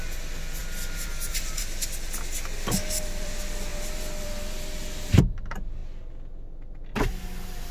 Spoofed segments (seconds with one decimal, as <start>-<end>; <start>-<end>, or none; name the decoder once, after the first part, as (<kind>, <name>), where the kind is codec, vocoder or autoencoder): 0.6-1.9 (vocoder, BigVGAN v2)